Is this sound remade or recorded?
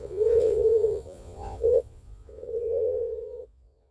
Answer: remade